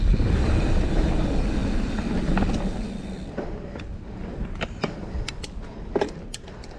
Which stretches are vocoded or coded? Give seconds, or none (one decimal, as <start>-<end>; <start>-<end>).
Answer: none